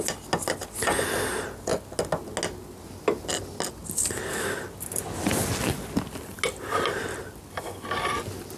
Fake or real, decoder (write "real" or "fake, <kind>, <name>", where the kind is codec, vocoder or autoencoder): real